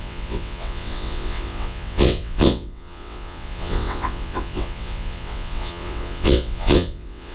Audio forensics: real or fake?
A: fake